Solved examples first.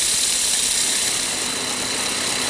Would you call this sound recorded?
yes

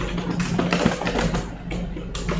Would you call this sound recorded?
yes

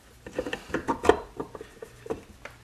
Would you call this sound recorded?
yes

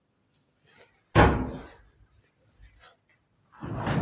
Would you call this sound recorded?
yes